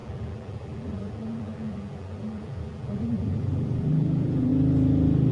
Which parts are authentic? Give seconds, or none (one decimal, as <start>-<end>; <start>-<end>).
4.5-5.3